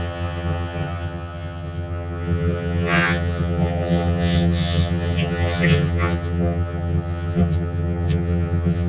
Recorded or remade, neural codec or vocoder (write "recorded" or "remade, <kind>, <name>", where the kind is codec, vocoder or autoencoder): remade, vocoder, HiFi-GAN